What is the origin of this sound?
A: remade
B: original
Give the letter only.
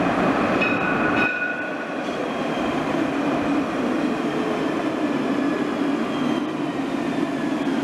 B